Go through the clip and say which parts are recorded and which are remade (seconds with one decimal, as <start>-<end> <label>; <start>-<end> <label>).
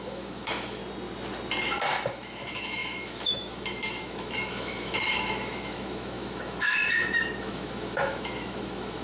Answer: 0.0-0.8 remade; 0.8-2.1 recorded; 2.1-6.8 remade; 6.8-7.4 recorded; 7.4-9.0 remade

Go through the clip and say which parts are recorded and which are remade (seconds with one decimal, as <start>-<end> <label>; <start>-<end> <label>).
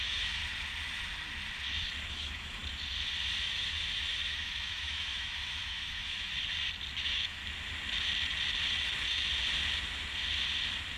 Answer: 0.0-0.4 remade; 0.4-2.1 recorded; 2.1-2.6 remade; 2.6-3.4 recorded; 3.4-6.3 remade; 6.3-7.0 recorded; 7.0-7.4 remade; 7.4-11.0 recorded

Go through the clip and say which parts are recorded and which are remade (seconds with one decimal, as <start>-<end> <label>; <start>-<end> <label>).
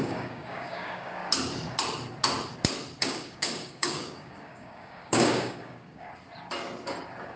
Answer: 0.0-1.2 remade; 1.2-3.0 recorded; 3.0-6.1 remade; 6.1-7.4 recorded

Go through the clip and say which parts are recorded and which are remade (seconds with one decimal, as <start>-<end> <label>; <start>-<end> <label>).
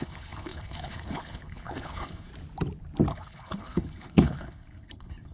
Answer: 0.0-2.3 remade; 2.3-3.1 recorded; 3.1-5.3 remade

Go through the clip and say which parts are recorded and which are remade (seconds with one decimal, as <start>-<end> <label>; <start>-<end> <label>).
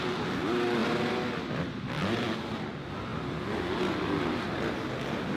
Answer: 0.0-5.4 recorded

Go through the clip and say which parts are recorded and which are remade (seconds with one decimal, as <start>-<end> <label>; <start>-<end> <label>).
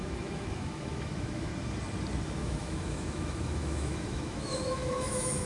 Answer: 0.0-1.5 remade; 1.5-2.4 recorded; 2.4-5.5 remade